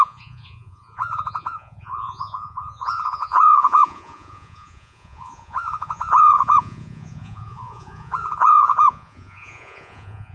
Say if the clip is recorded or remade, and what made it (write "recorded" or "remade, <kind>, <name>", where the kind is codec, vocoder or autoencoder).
remade, vocoder, Vocos